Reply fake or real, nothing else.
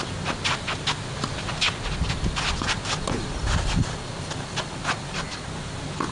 real